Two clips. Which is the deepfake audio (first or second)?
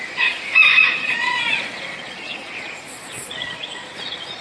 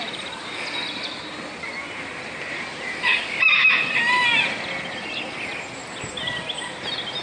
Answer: first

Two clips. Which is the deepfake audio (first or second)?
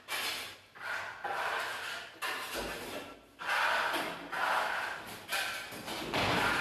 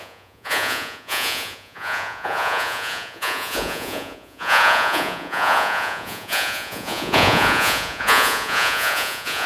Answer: second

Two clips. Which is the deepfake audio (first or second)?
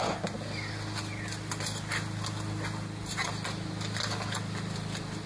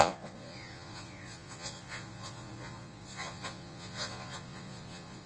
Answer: second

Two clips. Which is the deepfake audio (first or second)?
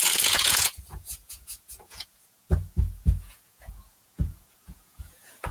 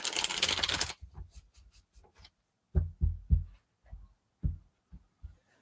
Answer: first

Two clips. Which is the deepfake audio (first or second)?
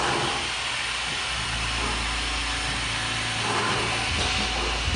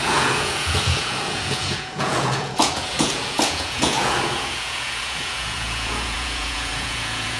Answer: second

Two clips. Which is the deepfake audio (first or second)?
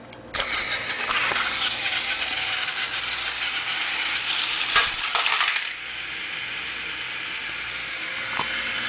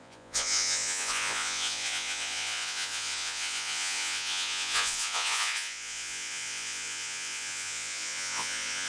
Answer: second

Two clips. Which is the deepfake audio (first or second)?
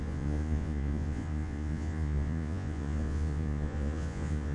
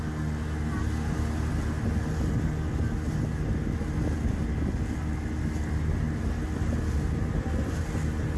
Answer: first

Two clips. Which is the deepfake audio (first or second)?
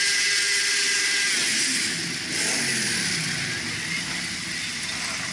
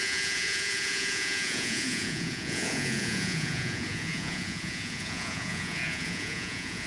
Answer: second